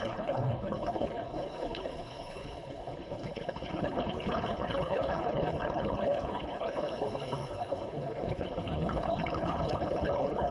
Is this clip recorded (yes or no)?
no